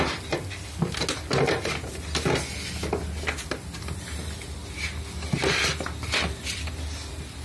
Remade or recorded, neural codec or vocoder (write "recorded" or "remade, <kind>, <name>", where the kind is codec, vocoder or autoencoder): recorded